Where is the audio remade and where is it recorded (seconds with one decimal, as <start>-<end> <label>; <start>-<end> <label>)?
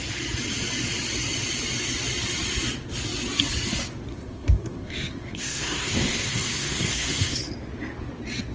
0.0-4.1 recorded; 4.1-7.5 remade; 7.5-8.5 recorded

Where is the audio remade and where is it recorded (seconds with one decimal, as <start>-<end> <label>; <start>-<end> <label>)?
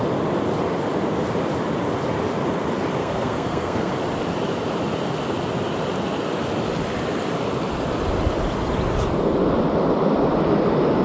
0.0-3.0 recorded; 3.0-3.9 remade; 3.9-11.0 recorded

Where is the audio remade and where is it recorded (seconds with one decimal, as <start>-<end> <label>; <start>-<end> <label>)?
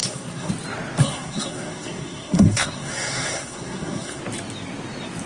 0.0-0.5 remade; 0.5-1.0 recorded; 1.0-4.2 remade; 4.2-5.3 recorded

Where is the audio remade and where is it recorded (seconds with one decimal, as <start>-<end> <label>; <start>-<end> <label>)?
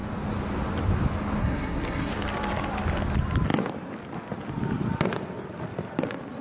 0.0-1.4 recorded; 1.4-2.1 remade; 2.1-6.4 recorded